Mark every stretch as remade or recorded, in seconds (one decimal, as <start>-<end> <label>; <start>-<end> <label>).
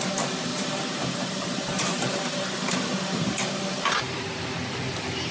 0.0-0.5 recorded; 0.5-3.2 remade; 3.2-3.7 recorded; 3.7-4.2 remade; 4.2-5.3 recorded